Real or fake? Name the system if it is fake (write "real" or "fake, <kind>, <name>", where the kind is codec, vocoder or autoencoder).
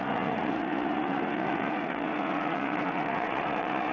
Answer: fake, vocoder, Vocos